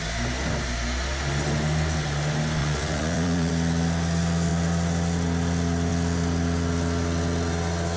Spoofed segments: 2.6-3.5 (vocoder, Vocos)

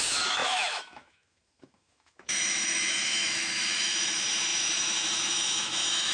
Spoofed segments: 0.0-6.1 (autoencoder, DAC-VAE)

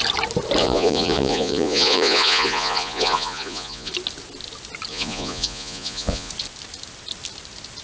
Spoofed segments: 0.6-3.9 (vocoder, Vocos); 4.9-6.3